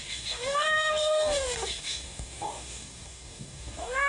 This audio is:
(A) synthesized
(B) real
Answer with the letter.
A